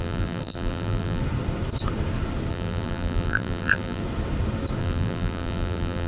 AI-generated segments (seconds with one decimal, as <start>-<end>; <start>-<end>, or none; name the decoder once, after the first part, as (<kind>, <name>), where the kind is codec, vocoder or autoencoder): 0.0-1.2 (vocoder, BigVGAN v2); 2.5-4.0; 4.8-6.1